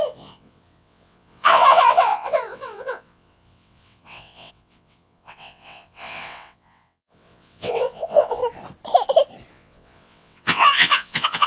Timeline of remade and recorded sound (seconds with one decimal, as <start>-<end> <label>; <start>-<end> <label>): 0.0-8.4 remade; 8.4-9.5 recorded; 9.5-11.5 remade